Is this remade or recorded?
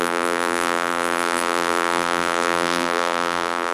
remade